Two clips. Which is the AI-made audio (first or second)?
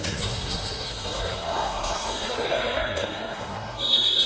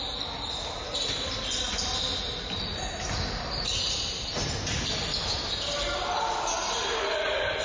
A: first